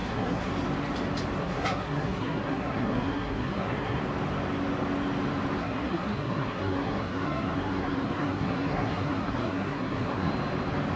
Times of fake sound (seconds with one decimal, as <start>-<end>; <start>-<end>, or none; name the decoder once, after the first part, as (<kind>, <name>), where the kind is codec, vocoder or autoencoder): 0.0-0.5 (codec, SNAC); 1.4-4.0; 5.6-10.3